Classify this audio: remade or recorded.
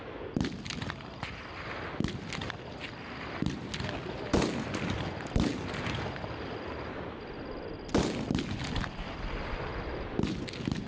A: recorded